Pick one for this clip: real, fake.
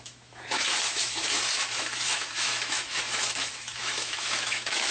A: fake